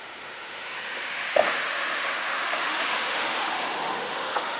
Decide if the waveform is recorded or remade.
remade